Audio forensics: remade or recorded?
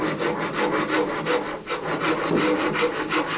recorded